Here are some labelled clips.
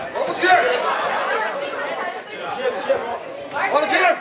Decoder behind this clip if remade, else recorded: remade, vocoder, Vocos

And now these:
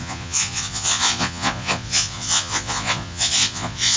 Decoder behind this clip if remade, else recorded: remade, vocoder, Vocos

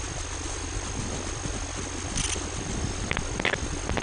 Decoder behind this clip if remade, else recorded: recorded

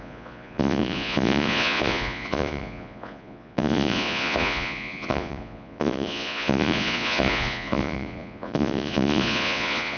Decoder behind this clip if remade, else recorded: remade, vocoder, Vocos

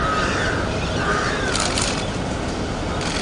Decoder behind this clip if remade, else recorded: recorded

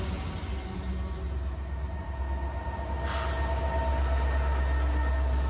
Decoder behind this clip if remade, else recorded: recorded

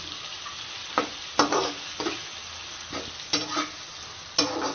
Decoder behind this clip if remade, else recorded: recorded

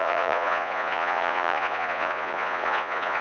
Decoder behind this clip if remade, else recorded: remade, vocoder, Vocos